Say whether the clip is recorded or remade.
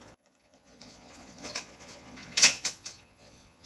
remade